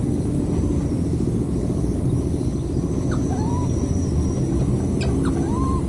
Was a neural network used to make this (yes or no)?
no